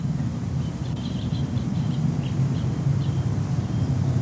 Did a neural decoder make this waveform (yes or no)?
yes